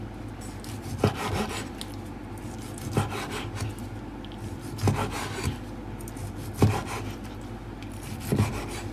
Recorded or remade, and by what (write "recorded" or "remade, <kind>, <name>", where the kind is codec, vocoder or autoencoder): recorded